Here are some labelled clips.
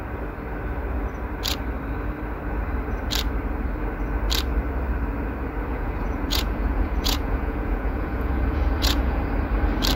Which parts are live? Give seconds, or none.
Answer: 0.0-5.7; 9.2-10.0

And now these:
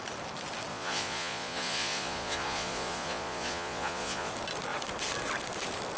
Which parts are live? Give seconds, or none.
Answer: 0.0-0.7; 4.3-6.0

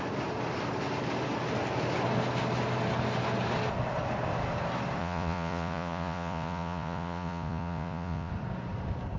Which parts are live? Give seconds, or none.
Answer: 0.0-5.0; 8.3-9.2

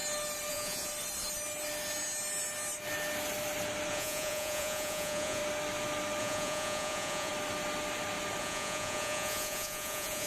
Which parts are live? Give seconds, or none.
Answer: 0.0-0.5; 0.9-3.9; 5.4-6.2; 7.3-8.4

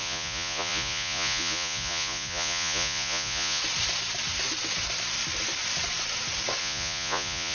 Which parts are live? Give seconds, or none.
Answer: 3.6-6.6

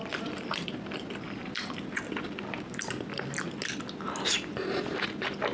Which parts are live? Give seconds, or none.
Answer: 0.0-5.5